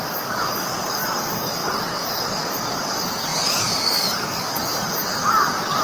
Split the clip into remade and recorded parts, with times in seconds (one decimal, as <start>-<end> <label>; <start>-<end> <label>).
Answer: 0.0-5.8 remade